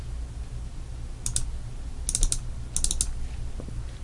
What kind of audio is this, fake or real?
real